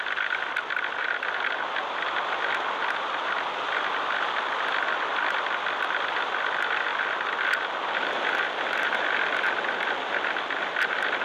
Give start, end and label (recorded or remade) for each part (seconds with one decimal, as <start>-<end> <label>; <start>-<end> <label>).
0.0-11.2 recorded